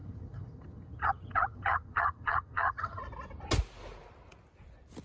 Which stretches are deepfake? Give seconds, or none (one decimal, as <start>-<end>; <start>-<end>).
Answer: 0.0-3.0